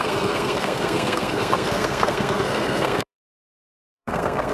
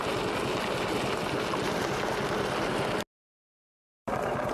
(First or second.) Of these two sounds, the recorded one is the second